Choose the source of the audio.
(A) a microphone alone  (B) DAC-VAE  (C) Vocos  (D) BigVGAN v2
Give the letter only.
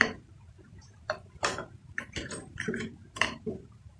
D